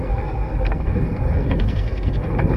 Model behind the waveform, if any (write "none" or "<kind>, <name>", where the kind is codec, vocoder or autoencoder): codec, SNAC